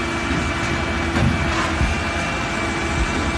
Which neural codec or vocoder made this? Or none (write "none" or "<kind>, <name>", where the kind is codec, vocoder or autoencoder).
none